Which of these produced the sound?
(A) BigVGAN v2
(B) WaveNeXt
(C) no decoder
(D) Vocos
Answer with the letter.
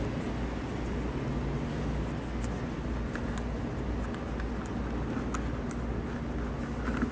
C